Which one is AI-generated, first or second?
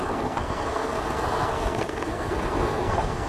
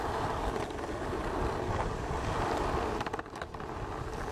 first